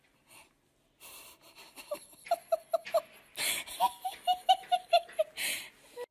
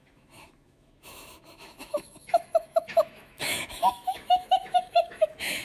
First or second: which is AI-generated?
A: second